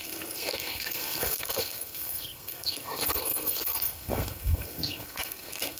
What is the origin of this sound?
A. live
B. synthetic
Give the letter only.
B